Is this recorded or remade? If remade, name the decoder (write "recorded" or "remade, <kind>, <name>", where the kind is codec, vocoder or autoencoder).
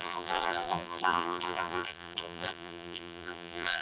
remade, vocoder, BigVGAN v2